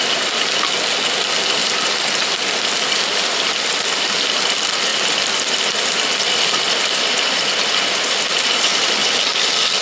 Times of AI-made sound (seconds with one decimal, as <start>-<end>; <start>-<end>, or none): 4.9-8.3